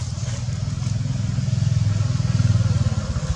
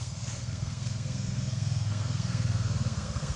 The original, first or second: first